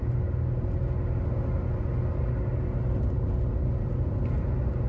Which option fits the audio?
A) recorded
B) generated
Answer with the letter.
A